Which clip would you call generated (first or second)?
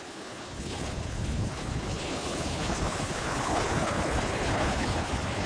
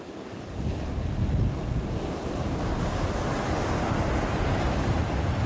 first